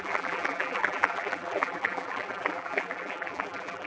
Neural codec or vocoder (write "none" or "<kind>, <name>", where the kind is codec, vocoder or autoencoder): vocoder, BigVGAN v2